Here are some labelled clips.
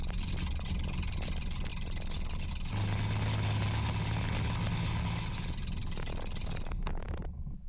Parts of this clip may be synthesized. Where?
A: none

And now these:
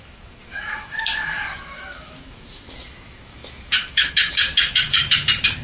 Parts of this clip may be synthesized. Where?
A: 0.0-5.6 (autoencoder, DAC-VAE)